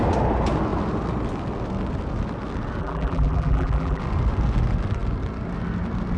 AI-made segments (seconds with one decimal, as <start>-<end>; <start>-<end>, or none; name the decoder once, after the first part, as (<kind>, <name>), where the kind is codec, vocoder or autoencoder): 2.8-4.0 (vocoder, BigVGAN v2)